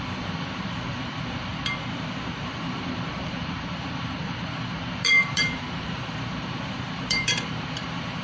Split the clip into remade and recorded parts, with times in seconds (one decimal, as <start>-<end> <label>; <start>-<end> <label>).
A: 0.0-1.5 remade; 1.5-2.4 recorded; 2.4-8.2 remade